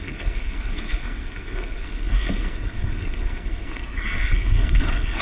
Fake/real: fake